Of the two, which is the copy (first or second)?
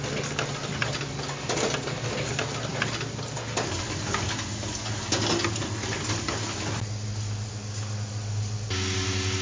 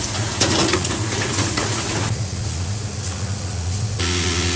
second